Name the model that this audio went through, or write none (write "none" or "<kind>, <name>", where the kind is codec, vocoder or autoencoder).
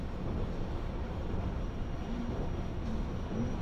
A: none